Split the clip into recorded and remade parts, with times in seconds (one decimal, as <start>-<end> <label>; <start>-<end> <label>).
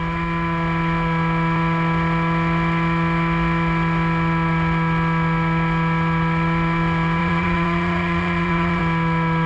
0.0-7.2 recorded; 7.2-8.8 remade; 8.8-9.5 recorded